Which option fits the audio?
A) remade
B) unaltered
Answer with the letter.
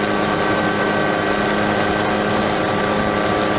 B